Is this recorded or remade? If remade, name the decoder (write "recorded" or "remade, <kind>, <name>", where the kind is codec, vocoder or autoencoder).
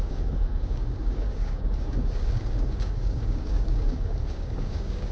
remade, codec, DAC